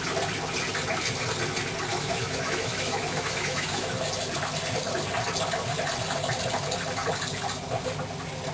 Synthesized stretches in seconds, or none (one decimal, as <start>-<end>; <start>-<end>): 1.9-3.9